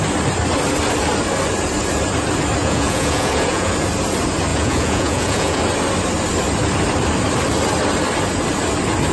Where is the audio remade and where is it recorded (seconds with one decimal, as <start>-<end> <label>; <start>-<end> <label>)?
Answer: 0.0-2.6 recorded; 2.6-3.7 remade; 3.7-4.5 recorded; 4.5-5.6 remade; 5.6-9.1 recorded